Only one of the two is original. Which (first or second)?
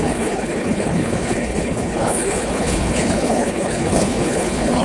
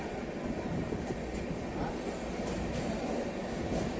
second